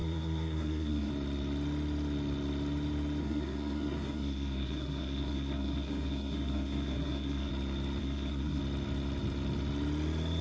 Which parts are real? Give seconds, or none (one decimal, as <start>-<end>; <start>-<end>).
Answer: 1.1-3.2; 7.5-8.0; 8.6-10.4